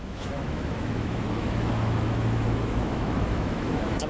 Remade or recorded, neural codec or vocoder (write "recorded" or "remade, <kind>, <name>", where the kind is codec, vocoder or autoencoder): remade, autoencoder, DAC-VAE